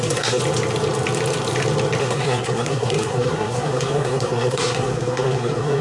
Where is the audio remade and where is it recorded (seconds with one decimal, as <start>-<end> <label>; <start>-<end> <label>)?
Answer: 0.0-0.4 remade; 0.4-2.0 recorded; 2.0-5.8 remade